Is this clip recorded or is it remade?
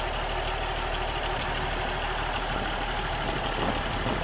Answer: remade